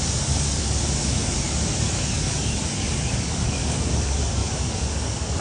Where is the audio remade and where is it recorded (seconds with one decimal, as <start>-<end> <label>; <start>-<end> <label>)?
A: 0.0-5.4 remade